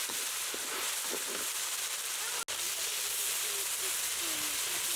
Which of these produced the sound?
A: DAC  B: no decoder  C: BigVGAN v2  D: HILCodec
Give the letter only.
B